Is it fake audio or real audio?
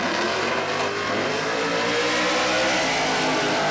real